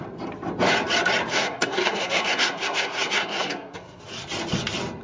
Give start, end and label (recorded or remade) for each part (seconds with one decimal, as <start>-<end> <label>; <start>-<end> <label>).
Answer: 0.0-1.3 recorded; 1.3-4.0 remade; 4.0-5.0 recorded